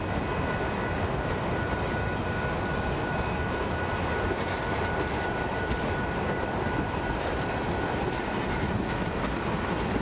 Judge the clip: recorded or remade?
recorded